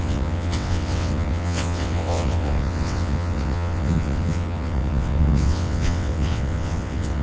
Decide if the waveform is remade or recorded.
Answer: remade